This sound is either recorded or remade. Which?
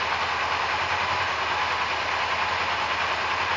recorded